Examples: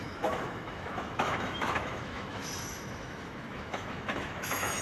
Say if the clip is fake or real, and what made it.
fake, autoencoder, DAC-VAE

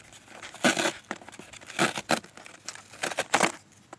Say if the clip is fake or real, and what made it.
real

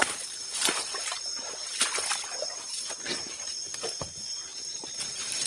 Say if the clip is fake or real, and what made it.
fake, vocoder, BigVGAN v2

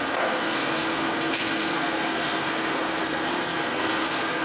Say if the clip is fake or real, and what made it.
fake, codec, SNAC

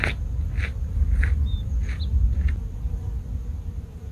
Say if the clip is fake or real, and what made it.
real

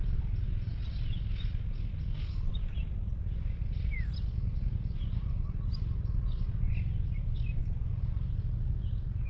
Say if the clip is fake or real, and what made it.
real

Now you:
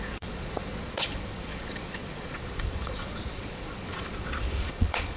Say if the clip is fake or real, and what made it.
fake, vocoder, Vocos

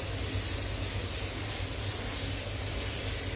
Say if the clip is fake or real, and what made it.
real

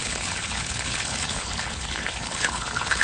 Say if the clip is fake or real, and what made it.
fake, codec, HILCodec